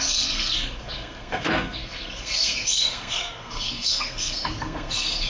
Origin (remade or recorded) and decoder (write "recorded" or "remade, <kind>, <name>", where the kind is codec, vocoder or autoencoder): remade, codec, SNAC